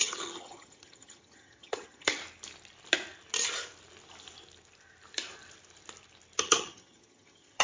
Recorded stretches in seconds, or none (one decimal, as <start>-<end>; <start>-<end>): 2.2-6.4